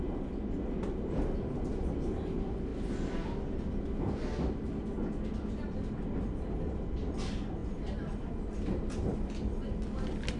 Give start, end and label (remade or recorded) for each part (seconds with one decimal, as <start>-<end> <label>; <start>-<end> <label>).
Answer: 0.0-10.4 recorded